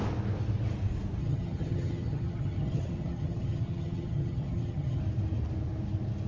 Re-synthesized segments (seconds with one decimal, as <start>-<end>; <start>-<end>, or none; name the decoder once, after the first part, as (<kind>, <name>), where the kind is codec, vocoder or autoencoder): 1.2-5.0 (vocoder, HiFi-GAN)